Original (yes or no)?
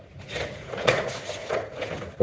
no